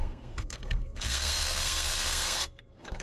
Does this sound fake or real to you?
fake